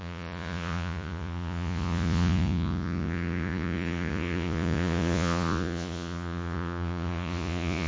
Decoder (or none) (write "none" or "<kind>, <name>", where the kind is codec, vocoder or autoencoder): vocoder, Vocos